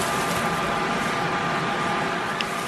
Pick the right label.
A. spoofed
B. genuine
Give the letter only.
B